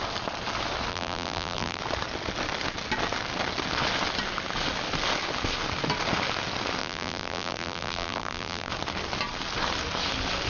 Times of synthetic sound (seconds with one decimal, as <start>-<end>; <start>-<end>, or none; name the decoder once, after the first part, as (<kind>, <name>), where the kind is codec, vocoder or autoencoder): 0.9-1.8 (vocoder, BigVGAN v2); 6.8-8.7